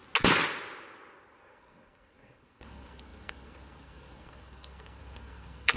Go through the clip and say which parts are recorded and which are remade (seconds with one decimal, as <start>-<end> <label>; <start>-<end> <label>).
0.0-1.4 recorded; 1.4-5.8 remade